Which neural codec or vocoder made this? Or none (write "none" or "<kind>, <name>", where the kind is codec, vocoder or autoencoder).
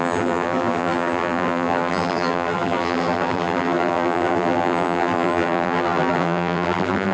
vocoder, BigVGAN v2